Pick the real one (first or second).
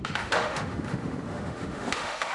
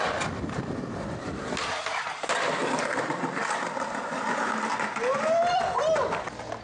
second